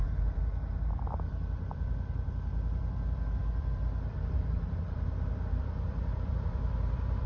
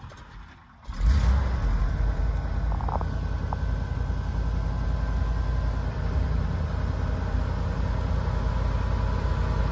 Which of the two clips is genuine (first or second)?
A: second